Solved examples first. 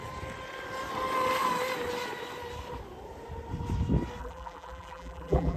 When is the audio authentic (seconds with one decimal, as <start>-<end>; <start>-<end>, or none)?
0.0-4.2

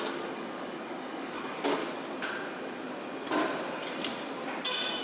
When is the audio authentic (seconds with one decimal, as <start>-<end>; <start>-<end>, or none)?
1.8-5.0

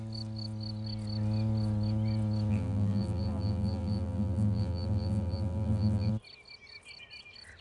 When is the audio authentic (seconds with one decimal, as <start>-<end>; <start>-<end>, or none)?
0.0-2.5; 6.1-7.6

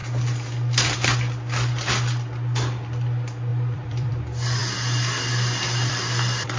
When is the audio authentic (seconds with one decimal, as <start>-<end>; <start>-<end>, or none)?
0.0-3.5; 4.1-6.6

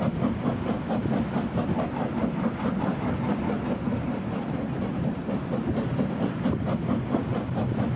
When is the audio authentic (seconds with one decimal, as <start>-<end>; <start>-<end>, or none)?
0.0-8.0

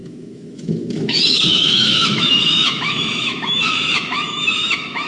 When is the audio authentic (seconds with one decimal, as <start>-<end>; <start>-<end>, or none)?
none